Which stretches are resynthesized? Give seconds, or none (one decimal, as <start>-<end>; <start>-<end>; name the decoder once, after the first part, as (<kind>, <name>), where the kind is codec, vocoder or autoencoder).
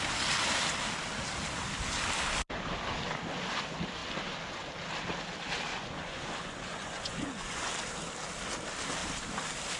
5.7-7.7 (vocoder, Vocos)